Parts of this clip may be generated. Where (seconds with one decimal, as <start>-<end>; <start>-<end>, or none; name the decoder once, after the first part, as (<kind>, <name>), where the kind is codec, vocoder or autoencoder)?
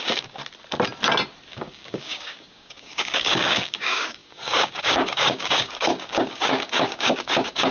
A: 0.0-0.4 (codec, DAC); 1.5-7.7